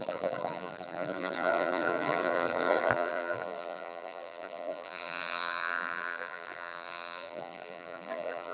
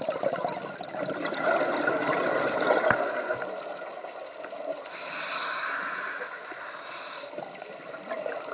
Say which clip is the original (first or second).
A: second